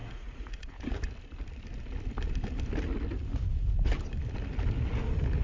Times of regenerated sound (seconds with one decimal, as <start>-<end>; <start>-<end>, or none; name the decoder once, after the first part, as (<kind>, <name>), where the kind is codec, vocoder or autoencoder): 0.0-0.8 (vocoder, Vocos)